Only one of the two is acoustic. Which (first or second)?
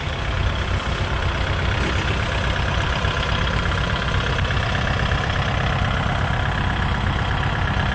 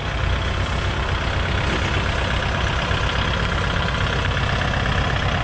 second